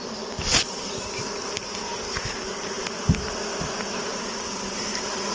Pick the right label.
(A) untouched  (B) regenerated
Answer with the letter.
A